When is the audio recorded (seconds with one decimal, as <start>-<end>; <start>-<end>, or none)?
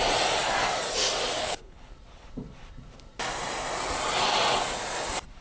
0.0-1.4; 1.9-5.4